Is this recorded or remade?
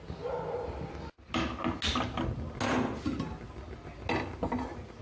recorded